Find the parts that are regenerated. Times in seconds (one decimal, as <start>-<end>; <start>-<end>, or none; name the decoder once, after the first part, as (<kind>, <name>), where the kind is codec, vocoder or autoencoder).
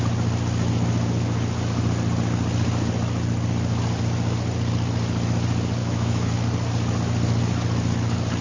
5.8-6.3 (autoencoder, DAC-VAE)